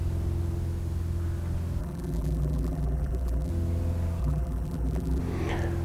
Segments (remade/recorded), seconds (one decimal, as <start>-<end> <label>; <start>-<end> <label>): 0.0-1.8 recorded; 1.8-3.5 remade; 3.5-4.2 recorded; 4.2-5.2 remade; 5.2-5.8 recorded